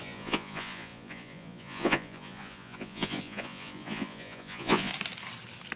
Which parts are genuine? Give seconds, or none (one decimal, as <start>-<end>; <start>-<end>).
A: 4.9-5.8